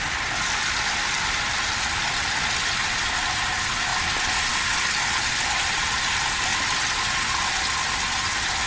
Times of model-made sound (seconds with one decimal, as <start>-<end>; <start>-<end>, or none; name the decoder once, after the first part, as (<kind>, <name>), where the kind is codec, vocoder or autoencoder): none